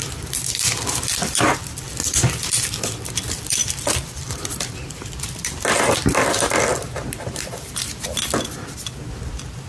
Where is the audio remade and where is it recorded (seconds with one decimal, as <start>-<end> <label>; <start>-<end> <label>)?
0.0-9.7 remade